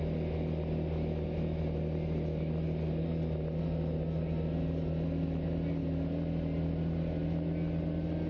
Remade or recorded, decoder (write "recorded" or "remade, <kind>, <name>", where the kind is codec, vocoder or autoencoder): recorded